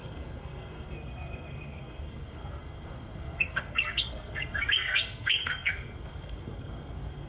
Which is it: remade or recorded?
remade